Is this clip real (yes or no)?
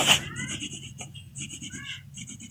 yes